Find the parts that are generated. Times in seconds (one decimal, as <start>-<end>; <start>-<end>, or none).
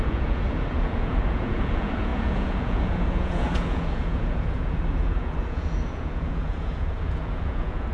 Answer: 0.0-7.9